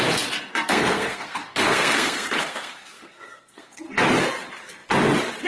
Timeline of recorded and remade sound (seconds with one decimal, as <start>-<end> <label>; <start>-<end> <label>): 0.0-0.5 recorded; 0.5-3.8 remade; 3.8-5.5 recorded